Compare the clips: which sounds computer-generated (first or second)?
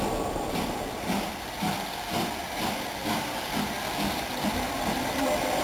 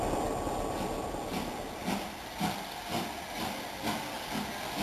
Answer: first